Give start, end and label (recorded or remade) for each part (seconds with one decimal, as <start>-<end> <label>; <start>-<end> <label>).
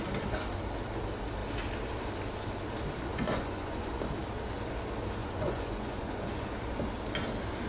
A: 0.0-3.1 recorded; 3.1-4.0 remade; 4.0-5.2 recorded; 5.2-6.5 remade; 6.5-7.7 recorded